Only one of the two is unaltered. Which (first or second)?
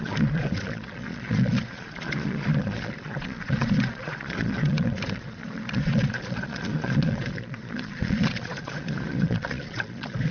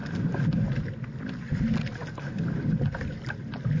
second